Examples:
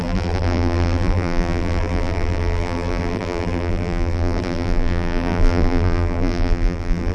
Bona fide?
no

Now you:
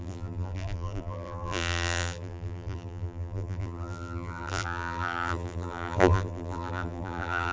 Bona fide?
no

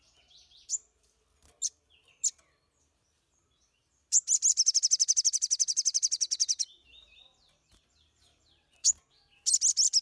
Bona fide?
yes